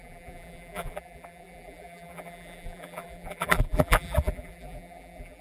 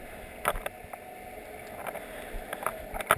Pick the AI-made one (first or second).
first